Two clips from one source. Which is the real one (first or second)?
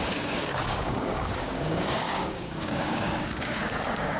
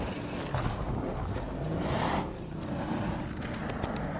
second